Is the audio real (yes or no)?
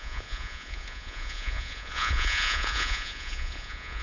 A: no